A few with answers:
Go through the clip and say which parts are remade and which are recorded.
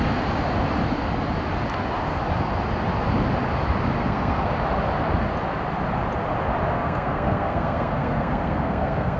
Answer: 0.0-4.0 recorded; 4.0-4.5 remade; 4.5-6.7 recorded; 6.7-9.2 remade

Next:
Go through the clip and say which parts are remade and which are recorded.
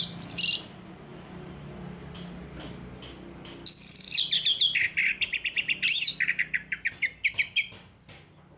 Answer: 0.0-8.6 recorded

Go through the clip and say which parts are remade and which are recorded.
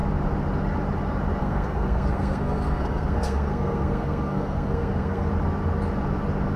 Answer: 0.0-1.4 recorded; 1.4-5.3 remade; 5.3-6.6 recorded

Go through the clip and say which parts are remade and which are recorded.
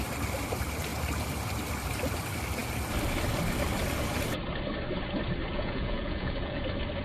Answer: 0.0-5.5 recorded; 5.5-6.6 remade; 6.6-7.0 recorded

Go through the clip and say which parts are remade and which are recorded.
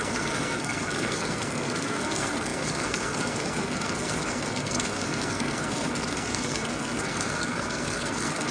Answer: 0.0-8.5 remade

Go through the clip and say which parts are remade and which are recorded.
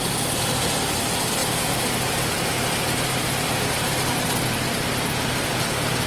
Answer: 0.0-6.1 recorded